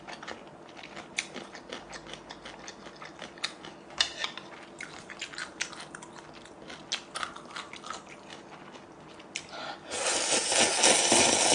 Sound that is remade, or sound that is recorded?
recorded